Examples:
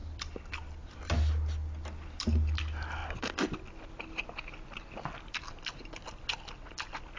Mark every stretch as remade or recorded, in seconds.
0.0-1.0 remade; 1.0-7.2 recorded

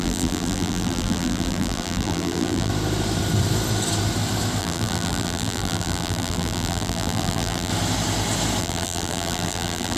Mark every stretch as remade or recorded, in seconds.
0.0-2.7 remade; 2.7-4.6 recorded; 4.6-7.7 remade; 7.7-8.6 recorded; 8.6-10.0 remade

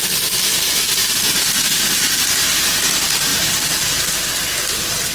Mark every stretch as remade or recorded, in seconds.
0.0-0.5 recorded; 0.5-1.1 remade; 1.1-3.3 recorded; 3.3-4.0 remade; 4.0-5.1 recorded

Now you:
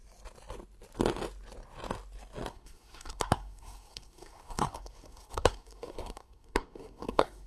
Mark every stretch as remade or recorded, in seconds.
0.0-2.5 recorded; 2.5-7.5 remade